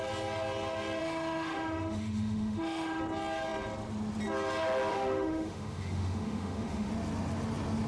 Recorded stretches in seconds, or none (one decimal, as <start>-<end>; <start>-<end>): 0.0-1.0; 3.0-4.9; 6.9-7.9